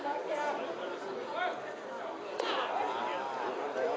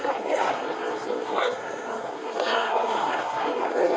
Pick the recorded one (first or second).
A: first